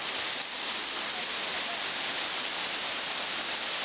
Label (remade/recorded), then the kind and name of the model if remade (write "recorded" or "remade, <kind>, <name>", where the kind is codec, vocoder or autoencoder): recorded